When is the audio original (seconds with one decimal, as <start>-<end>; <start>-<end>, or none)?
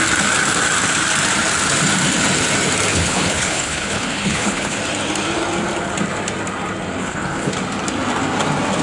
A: 0.0-2.9; 4.8-7.0; 7.5-8.8